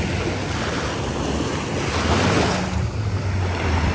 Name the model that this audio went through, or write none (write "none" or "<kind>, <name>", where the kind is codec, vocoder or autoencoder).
none